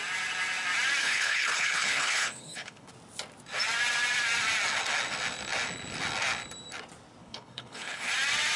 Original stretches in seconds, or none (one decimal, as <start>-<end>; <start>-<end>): 0.0-1.0; 2.9-7.2; 8.1-8.6